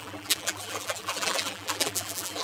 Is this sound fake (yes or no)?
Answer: yes